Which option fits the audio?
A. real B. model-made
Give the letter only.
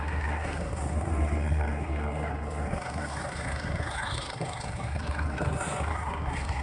B